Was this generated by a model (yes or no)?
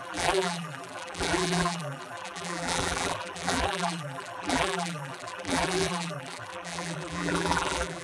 yes